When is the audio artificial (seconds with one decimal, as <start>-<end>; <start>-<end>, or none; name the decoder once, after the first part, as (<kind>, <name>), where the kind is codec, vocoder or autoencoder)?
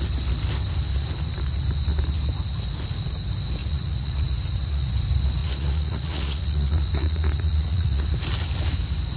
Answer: 3.6-4.9 (vocoder, Vocos); 5.4-8.0